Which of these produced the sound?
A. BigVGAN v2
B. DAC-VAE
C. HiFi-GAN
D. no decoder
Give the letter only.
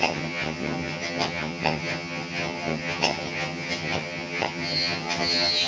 C